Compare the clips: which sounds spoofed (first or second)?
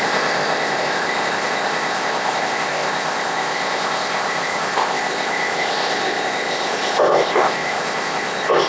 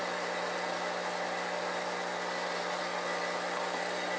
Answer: first